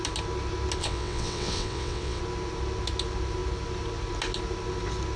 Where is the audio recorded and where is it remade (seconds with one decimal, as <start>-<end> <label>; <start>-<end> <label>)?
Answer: 0.0-0.8 recorded; 0.8-2.2 remade; 2.2-5.2 recorded